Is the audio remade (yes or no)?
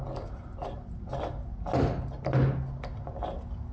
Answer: no